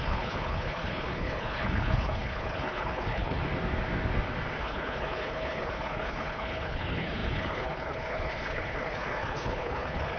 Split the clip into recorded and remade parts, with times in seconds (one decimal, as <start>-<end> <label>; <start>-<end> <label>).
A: 0.0-3.4 remade; 3.4-4.6 recorded; 4.6-10.2 remade